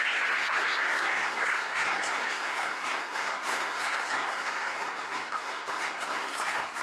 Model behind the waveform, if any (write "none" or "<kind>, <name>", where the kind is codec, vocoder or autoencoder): codec, SNAC